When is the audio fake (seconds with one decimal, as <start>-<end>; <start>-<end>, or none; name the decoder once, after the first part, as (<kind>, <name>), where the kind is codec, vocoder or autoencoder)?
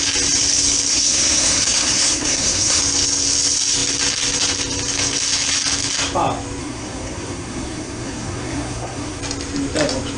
0.9-2.8 (codec, SNAC); 6.6-9.2